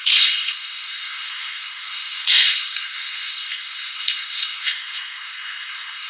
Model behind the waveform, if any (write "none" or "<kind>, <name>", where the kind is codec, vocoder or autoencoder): codec, SNAC